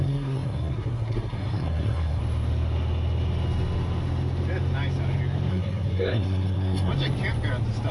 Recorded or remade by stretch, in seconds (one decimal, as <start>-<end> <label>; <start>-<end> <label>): 0.0-2.2 remade; 2.2-5.5 recorded; 5.5-6.9 remade; 6.9-7.9 recorded